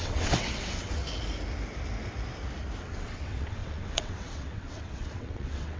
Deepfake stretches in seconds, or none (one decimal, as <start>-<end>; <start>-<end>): 0.0-1.0; 2.8-5.8